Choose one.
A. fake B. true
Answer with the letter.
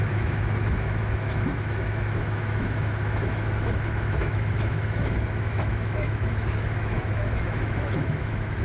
A